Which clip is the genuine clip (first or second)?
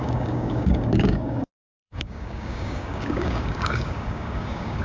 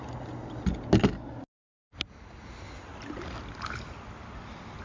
second